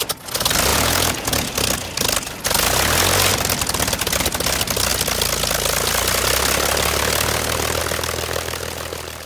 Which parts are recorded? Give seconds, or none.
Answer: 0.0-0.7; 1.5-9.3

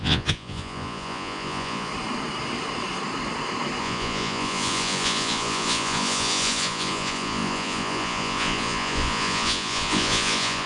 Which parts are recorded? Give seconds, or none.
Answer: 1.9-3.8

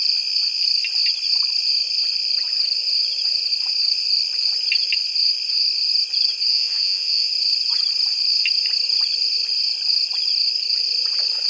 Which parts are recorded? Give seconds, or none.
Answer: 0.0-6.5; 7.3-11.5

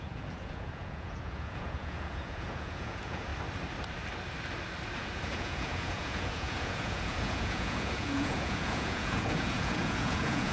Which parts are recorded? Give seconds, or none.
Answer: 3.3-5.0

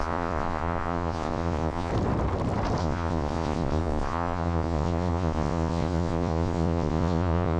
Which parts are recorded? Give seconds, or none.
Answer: 1.9-2.8

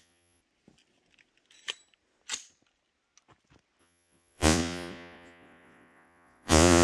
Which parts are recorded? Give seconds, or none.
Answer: 0.4-3.8

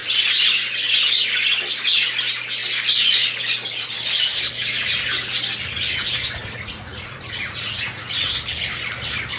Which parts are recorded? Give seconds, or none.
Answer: 0.0-6.4; 8.3-9.4